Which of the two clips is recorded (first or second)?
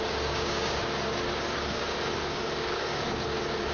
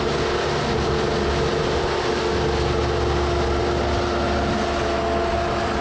second